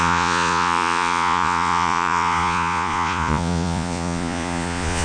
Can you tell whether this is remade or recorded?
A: remade